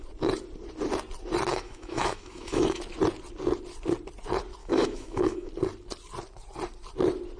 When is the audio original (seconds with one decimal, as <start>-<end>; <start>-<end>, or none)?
0.0-1.5; 2.8-4.6; 5.5-7.4